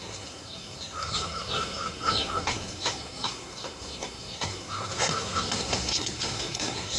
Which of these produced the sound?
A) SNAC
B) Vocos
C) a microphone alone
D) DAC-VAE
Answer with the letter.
A